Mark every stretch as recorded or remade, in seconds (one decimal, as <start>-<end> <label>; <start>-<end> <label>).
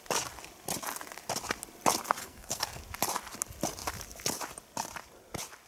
0.0-2.2 recorded; 2.2-2.8 remade; 2.8-5.7 recorded